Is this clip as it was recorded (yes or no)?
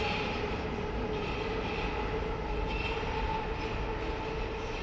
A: yes